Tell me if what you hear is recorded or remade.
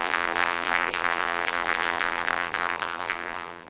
remade